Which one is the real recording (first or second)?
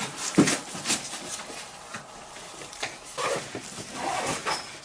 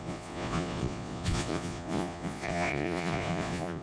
first